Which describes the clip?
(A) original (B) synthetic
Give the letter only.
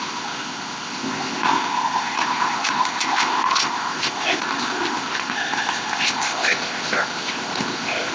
B